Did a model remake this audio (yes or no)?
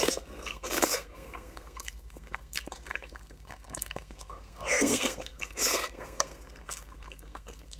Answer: yes